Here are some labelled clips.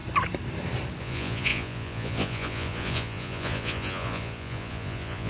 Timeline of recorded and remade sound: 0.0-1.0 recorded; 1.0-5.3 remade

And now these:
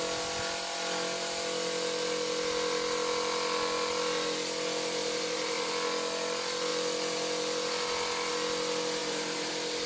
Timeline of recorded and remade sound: 0.0-5.0 recorded; 5.0-5.7 remade; 5.7-9.0 recorded; 9.0-9.5 remade; 9.5-9.9 recorded

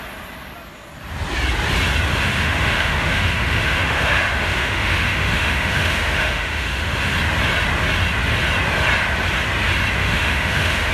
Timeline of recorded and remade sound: 0.0-2.1 recorded; 2.1-7.1 remade; 7.1-10.0 recorded; 10.0-10.9 remade